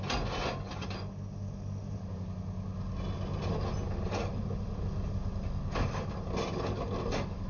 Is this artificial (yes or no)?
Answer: no